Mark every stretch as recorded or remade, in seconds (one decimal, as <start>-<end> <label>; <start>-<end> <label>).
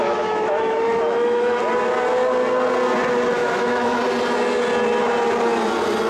0.0-1.6 remade; 1.6-3.4 recorded; 3.4-4.0 remade; 4.0-6.1 recorded